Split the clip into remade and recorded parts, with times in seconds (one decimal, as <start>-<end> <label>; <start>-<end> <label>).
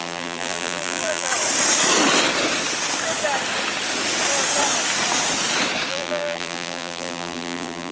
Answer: 0.0-1.3 remade; 1.3-5.9 recorded; 5.9-7.9 remade